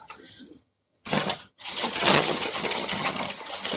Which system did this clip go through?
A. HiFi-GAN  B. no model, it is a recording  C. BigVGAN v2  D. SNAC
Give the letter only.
A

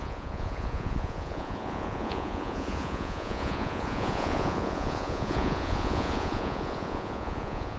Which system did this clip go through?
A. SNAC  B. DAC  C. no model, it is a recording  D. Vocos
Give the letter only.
D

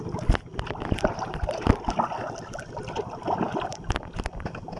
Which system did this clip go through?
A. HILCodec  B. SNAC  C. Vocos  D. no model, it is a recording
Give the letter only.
D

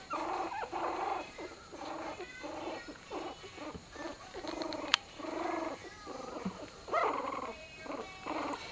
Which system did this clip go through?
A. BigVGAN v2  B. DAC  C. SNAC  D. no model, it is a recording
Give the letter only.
A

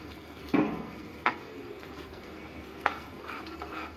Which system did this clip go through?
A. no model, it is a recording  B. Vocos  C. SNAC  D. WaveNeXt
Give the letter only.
C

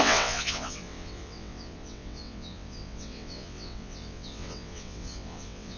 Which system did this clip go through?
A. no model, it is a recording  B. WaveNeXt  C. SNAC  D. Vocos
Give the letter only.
B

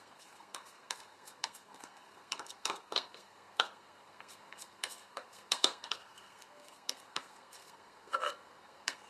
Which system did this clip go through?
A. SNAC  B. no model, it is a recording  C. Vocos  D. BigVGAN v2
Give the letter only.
A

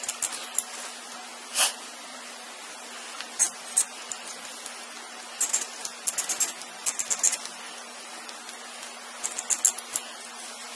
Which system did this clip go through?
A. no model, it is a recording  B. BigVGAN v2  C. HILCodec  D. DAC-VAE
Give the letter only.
A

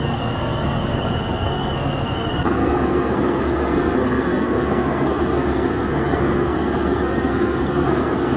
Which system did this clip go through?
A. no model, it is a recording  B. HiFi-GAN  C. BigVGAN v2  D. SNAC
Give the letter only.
D